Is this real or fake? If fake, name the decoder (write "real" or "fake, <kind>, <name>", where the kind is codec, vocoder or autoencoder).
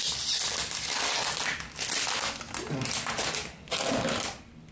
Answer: real